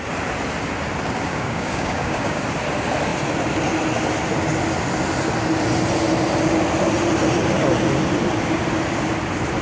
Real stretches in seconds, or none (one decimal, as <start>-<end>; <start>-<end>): 0.0-1.3; 2.4-9.6